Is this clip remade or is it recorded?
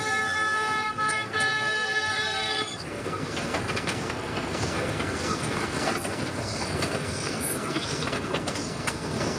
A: remade